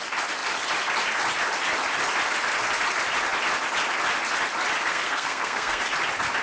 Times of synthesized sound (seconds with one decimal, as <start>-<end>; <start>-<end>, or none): 4.9-5.8